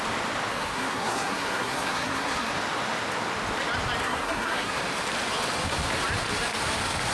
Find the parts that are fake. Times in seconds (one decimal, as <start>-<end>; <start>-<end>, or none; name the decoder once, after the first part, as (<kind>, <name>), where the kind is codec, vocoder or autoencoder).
0.5-2.5 (codec, SNAC); 4.0-4.8